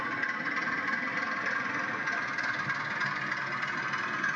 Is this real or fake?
real